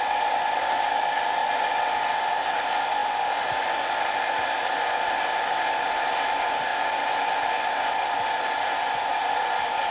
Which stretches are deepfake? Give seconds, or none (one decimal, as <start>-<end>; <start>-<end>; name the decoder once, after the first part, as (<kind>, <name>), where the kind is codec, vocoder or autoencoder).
none